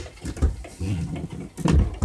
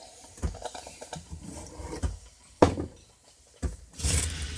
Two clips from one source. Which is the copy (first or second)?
second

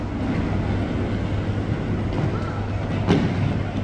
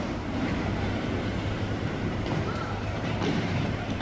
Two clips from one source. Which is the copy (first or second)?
second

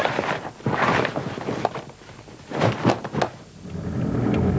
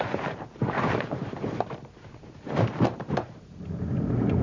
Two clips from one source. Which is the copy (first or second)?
second